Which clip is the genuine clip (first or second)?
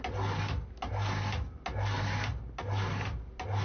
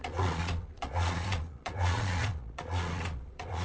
first